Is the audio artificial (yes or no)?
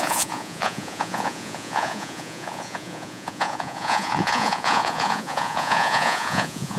yes